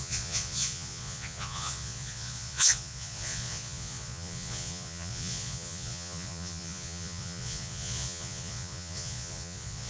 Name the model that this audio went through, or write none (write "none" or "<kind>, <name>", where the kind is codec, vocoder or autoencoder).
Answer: vocoder, Vocos